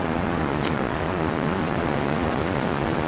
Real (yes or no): no